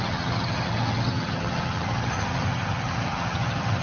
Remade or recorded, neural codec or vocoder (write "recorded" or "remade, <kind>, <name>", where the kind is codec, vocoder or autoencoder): remade, vocoder, HiFi-GAN